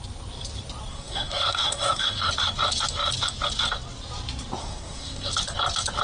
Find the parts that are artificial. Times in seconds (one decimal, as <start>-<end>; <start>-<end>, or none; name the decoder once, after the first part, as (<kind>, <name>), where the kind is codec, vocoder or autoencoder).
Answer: 0.9-2.3 (codec, SNAC); 4.6-5.3